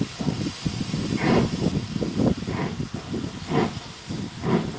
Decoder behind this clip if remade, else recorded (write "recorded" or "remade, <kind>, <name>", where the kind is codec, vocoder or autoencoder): recorded